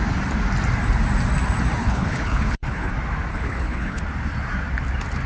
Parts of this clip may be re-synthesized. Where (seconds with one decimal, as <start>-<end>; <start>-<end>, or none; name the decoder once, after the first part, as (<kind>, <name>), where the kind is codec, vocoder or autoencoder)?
1.8-2.9 (codec, HILCodec); 3.3-4.0